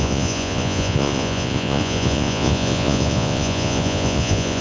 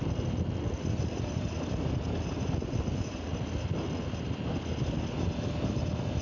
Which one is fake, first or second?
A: first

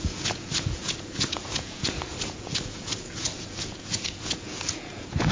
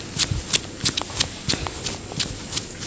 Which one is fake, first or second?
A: first